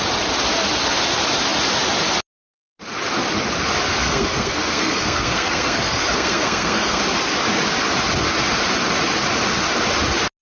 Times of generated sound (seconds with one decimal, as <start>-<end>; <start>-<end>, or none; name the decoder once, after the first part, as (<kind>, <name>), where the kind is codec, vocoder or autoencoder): 3.9-7.0 (codec, SNAC)

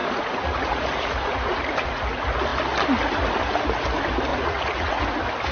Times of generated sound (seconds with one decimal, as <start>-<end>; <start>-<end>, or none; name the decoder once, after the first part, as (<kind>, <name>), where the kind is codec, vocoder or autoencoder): 0.0-2.0 (vocoder, Vocos); 4.3-5.0

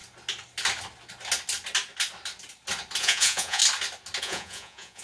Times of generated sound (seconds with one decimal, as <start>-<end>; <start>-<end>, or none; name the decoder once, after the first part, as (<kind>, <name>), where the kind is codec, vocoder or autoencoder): 3.0-3.6 (vocoder, Vocos); 4.2-5.0

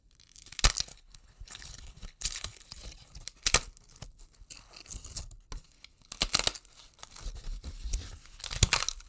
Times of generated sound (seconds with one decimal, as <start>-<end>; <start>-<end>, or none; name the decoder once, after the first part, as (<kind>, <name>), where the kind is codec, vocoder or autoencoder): 0.9-2.6 (codec, HILCodec)

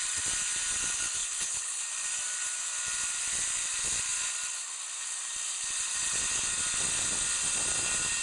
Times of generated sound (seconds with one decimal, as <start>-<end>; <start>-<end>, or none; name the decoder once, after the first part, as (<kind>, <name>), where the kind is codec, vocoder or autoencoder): 1.2-1.8 (codec, HILCodec)